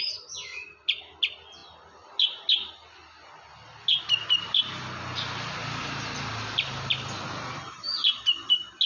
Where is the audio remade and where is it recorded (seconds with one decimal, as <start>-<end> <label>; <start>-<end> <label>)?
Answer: 0.0-8.9 recorded